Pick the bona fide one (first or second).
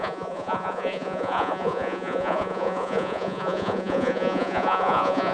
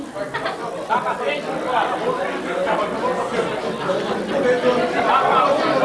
second